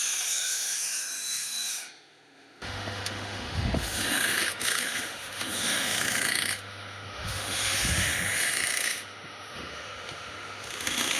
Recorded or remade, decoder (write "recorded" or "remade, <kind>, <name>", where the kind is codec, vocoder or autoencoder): remade, autoencoder, DAC-VAE